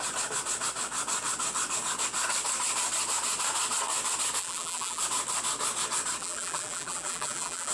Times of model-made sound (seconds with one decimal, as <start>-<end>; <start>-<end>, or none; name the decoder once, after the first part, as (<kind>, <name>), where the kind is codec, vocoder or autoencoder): 4.4-5.0 (vocoder, BigVGAN v2); 6.2-7.7